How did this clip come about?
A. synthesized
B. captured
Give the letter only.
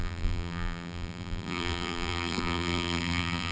A